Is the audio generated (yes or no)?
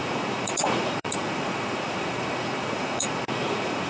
yes